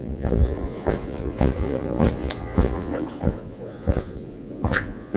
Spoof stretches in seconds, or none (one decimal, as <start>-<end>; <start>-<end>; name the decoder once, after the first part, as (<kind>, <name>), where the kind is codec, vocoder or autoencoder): 0.0-5.2 (vocoder, Vocos)